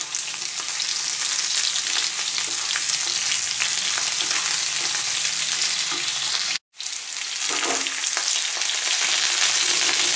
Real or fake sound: real